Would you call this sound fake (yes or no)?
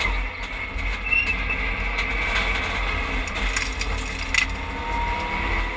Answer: no